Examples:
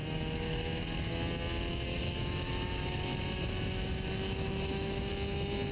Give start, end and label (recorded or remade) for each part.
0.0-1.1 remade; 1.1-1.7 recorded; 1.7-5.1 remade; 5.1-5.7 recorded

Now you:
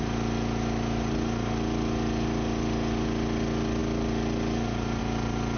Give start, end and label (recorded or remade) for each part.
0.0-5.6 recorded

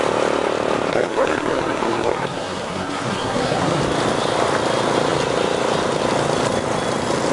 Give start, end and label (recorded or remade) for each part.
0.0-0.9 recorded; 0.9-3.8 remade; 3.8-7.3 recorded

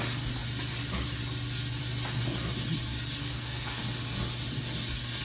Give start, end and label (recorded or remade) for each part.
0.0-3.2 recorded; 3.2-3.8 remade; 3.8-5.2 recorded

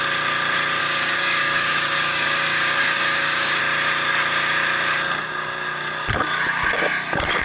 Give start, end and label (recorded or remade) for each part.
0.0-0.8 recorded; 0.8-3.6 remade; 3.6-7.4 recorded

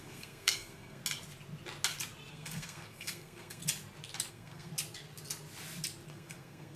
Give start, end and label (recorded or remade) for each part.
0.0-1.0 remade; 1.0-2.3 recorded; 2.3-3.6 remade; 3.6-4.3 recorded; 4.3-4.7 remade; 4.7-6.1 recorded; 6.1-6.8 remade